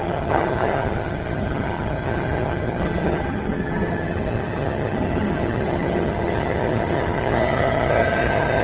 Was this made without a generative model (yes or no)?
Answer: no